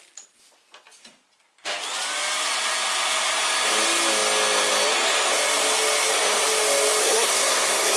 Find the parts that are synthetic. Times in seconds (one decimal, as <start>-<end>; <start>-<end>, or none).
7.0-8.0